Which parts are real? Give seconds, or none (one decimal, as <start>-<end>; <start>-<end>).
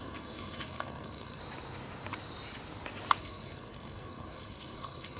1.4-3.2